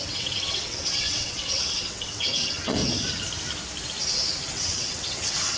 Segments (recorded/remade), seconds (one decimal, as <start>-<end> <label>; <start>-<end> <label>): 0.0-2.8 remade; 2.8-4.5 recorded; 4.5-5.6 remade